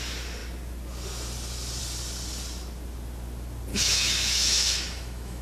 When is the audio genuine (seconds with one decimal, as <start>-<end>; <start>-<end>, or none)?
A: 0.0-3.7